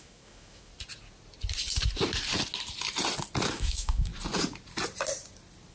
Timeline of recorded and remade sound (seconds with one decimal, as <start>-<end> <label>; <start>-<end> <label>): 0.0-0.7 remade; 0.7-3.5 recorded; 3.5-4.1 remade; 4.1-5.7 recorded